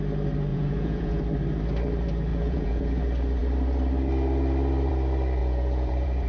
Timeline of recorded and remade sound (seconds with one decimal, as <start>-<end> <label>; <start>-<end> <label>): 0.0-0.5 recorded; 0.5-1.2 remade; 1.2-2.3 recorded; 2.3-3.0 remade; 3.0-5.4 recorded; 5.4-6.3 remade